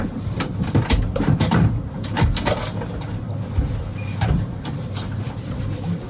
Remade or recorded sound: recorded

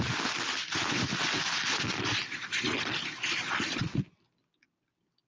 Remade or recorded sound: recorded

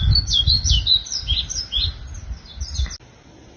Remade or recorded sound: recorded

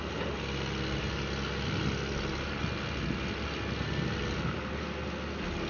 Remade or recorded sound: recorded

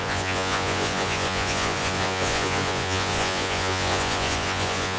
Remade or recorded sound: remade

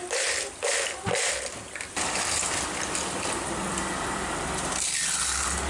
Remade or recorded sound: recorded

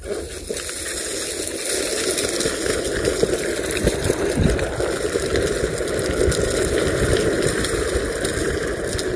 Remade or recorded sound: recorded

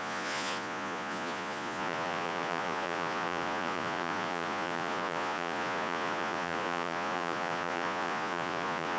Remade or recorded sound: remade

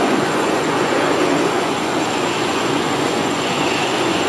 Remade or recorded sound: remade